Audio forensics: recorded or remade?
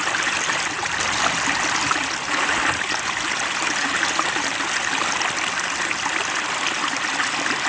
recorded